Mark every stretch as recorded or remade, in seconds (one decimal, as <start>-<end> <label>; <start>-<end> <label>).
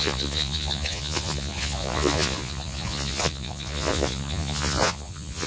0.0-5.5 remade